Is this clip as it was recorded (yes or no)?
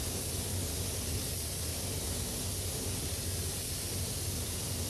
yes